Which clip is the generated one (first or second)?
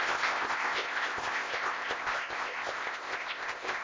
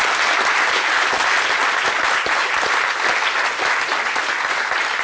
first